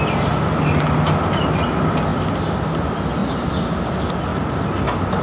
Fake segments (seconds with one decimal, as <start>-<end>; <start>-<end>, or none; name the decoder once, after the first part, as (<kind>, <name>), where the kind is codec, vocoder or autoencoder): none